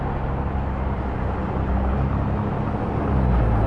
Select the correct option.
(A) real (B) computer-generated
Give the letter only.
A